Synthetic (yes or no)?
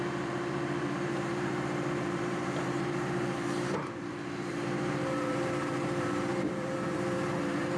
yes